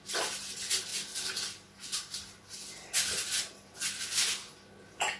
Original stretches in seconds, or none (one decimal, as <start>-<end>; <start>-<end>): 0.0-5.2